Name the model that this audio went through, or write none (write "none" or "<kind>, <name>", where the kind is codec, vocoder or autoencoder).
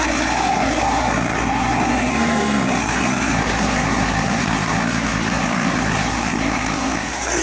codec, SNAC